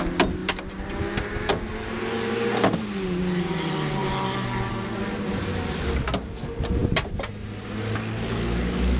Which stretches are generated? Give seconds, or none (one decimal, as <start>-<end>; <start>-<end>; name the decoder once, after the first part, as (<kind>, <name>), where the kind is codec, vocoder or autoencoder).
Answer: none